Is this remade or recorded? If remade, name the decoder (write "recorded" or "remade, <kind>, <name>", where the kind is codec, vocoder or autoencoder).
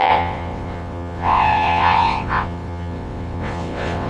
remade, vocoder, WaveNeXt